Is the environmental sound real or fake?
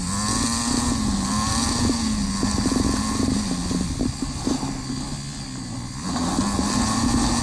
real